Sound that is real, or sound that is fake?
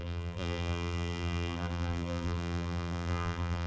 fake